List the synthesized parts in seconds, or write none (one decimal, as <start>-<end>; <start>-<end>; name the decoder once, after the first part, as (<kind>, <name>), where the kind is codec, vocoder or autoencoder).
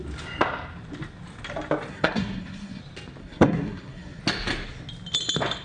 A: 1.9-2.8 (codec, SNAC); 3.2-4.2